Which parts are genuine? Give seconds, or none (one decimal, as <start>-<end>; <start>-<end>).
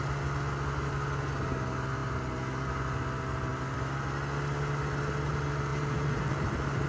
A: 0.0-5.7